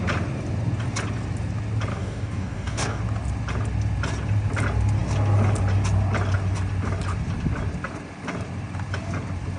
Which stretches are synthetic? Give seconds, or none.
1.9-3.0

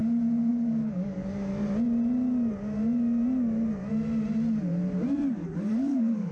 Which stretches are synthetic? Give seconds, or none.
0.5-1.5; 5.3-6.3

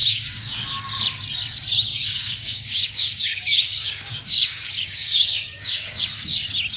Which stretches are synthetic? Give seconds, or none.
0.0-0.7; 1.9-6.0

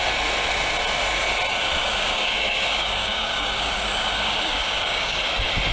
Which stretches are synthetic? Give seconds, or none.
1.8-5.2

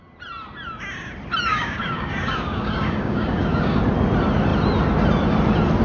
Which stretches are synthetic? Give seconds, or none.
1.5-3.8

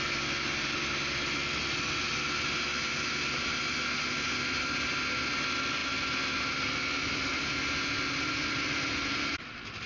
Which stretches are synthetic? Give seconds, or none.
none